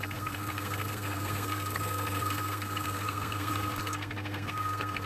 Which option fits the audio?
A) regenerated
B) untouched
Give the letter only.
A